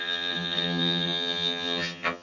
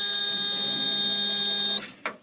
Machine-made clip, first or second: first